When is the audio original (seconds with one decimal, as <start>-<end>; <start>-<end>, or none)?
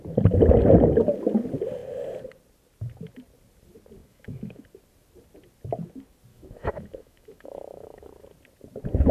0.0-4.0; 4.6-6.3; 8.1-9.1